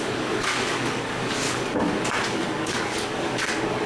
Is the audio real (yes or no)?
no